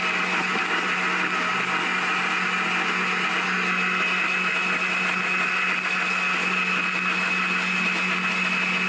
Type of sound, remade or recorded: recorded